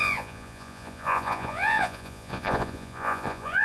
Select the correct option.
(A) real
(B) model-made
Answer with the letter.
B